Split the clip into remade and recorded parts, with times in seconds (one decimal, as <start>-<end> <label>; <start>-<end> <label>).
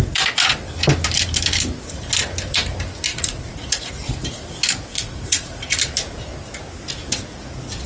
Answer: 0.0-3.1 recorded; 3.1-3.9 remade; 3.9-4.9 recorded; 4.9-5.8 remade; 5.8-7.9 recorded